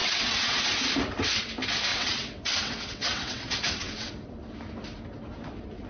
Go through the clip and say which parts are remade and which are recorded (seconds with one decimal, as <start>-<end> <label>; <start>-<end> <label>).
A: 0.0-0.6 remade; 0.6-1.9 recorded; 1.9-4.1 remade; 4.1-5.9 recorded